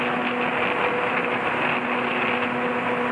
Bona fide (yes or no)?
yes